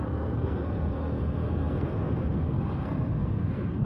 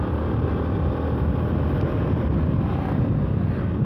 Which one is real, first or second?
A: second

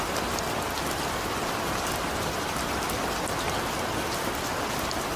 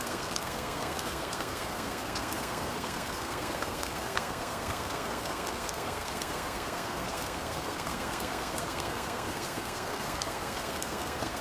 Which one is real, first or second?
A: first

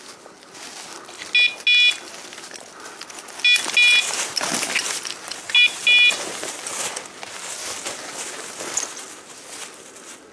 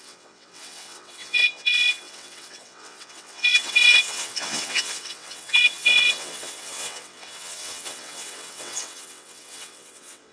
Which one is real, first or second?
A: first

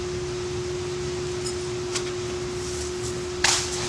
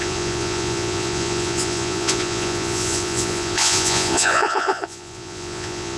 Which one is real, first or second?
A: first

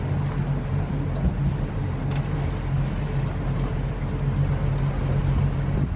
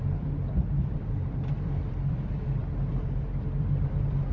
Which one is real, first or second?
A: first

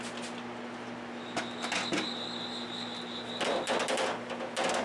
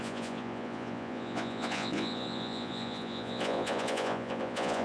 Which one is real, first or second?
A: first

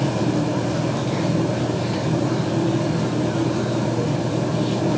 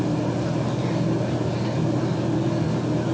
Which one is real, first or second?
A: second